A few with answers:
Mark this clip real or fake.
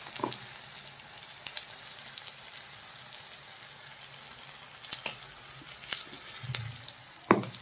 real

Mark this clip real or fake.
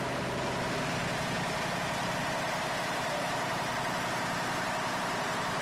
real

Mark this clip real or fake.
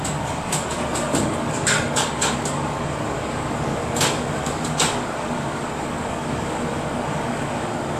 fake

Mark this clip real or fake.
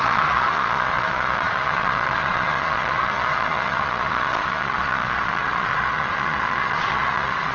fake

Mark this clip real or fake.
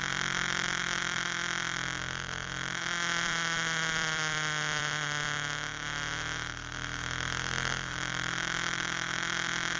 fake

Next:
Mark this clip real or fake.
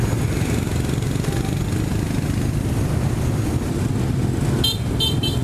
real